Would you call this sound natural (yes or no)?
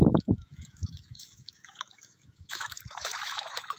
no